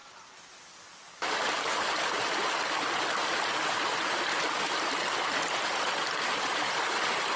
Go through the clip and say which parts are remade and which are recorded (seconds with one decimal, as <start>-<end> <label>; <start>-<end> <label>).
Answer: 0.0-7.4 recorded